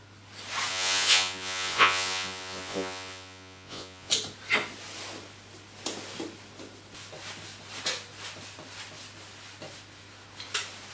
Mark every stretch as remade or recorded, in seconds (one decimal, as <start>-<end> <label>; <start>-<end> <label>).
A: 0.0-0.7 recorded; 0.7-4.1 remade; 4.1-10.9 recorded